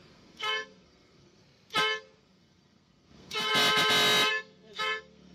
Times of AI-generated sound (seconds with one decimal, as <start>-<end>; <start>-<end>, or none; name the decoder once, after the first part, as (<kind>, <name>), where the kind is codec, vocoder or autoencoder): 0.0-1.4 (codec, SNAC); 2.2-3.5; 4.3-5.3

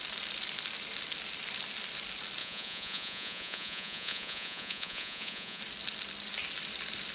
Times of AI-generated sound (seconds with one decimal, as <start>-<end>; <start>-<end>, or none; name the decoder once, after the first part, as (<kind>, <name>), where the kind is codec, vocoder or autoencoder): 2.4-5.6 (vocoder, Vocos)

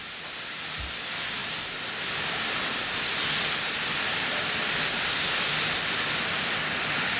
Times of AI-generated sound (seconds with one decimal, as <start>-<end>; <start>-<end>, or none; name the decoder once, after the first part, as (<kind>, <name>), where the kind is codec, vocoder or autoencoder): none

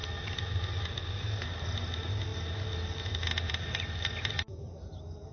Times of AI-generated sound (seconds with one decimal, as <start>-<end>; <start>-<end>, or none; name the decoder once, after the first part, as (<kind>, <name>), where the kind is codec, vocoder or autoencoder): none

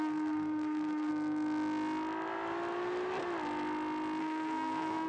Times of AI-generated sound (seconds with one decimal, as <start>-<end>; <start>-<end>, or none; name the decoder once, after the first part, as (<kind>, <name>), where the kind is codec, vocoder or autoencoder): 0.0-1.1 (codec, SNAC); 4.2-5.1

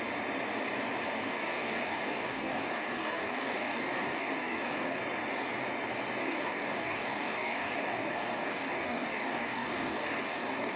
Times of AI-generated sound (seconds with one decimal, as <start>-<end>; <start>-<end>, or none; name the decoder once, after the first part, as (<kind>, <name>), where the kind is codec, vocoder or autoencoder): 1.2-5.0 (codec, DAC); 6.2-10.8

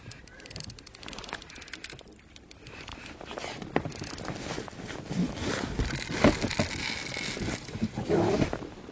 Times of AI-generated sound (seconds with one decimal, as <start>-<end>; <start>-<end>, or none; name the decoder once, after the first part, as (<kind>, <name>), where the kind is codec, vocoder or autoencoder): none